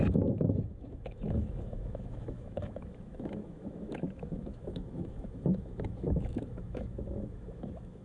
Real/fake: fake